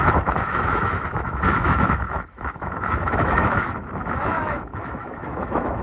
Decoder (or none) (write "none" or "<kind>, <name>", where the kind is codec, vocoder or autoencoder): autoencoder, DAC-VAE